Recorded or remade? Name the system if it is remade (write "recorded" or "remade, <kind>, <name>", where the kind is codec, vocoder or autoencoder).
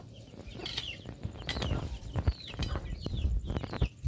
remade, vocoder, BigVGAN v2